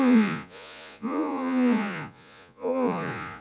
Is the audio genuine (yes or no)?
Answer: no